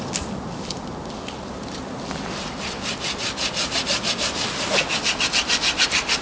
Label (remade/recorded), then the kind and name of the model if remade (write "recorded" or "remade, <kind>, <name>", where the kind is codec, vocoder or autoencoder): recorded